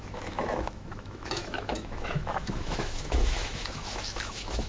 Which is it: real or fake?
fake